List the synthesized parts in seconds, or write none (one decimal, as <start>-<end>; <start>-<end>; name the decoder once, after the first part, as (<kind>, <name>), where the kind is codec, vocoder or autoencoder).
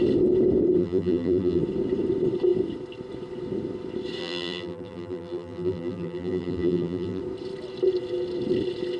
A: 0.8-1.6 (vocoder, BigVGAN v2); 4.2-7.2